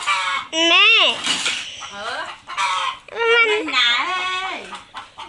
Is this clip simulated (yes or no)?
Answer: no